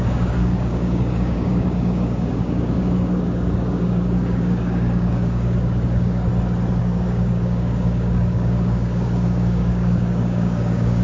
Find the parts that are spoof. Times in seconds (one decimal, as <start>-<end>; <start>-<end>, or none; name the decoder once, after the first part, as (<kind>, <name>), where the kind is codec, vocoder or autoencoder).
0.0-6.3 (codec, DAC); 6.8-11.0